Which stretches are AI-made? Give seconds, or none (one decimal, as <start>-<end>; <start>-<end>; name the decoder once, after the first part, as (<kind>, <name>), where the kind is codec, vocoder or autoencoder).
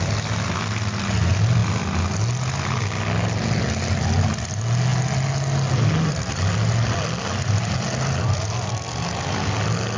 none